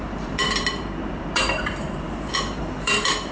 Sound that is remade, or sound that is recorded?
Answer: remade